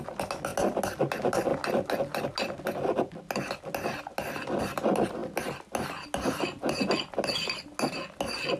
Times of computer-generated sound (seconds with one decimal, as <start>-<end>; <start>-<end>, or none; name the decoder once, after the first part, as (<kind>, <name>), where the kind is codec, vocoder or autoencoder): none